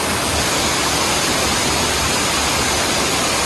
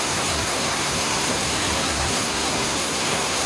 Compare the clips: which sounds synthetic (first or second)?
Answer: second